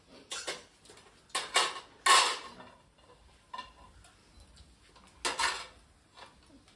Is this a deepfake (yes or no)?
no